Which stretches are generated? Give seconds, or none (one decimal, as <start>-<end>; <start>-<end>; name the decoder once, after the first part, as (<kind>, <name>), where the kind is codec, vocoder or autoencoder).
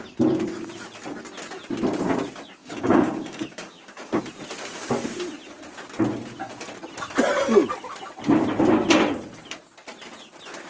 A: 2.6-4.2 (codec, DAC)